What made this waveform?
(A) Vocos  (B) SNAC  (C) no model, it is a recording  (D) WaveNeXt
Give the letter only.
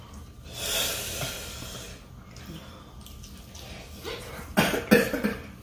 C